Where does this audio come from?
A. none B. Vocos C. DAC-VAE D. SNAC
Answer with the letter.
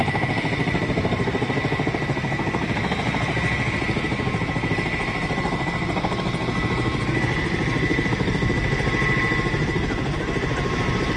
A